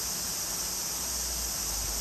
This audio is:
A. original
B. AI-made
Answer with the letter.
A